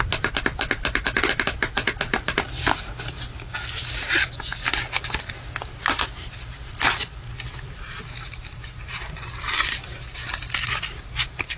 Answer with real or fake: real